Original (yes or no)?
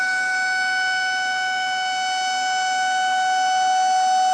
yes